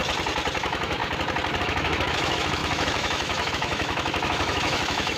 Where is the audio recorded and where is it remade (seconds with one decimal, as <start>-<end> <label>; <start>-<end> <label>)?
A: 0.0-0.6 recorded; 0.6-1.0 remade; 1.0-1.6 recorded; 1.6-5.2 remade